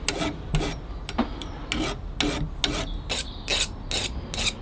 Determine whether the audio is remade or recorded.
recorded